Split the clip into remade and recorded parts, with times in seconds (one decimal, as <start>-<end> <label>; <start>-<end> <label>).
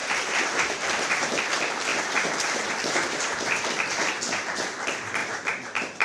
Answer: 0.0-1.4 remade; 1.4-1.9 recorded; 1.9-3.2 remade; 3.2-5.2 recorded; 5.2-6.0 remade